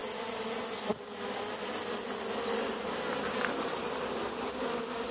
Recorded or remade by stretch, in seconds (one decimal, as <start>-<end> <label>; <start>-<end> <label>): 0.0-5.1 recorded